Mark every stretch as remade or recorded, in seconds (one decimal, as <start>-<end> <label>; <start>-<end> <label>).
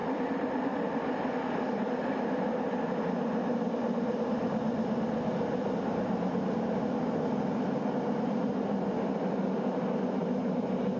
0.0-2.2 remade; 2.2-11.0 recorded